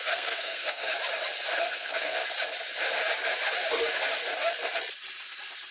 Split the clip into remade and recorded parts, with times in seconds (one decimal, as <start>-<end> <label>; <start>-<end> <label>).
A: 0.0-0.9 remade; 0.9-1.6 recorded; 1.6-2.2 remade; 2.2-5.7 recorded